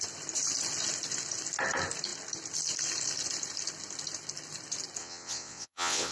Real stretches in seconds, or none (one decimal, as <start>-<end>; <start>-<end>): 0.0-5.0